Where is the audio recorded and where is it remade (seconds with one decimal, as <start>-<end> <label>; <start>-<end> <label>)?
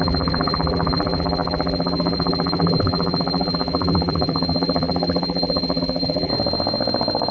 0.0-6.3 remade; 6.3-7.3 recorded